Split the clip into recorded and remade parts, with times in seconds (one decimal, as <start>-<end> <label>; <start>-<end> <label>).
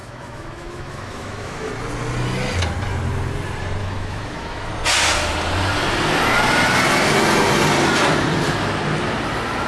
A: 0.0-1.7 remade; 1.7-3.8 recorded; 3.8-4.7 remade; 4.7-9.7 recorded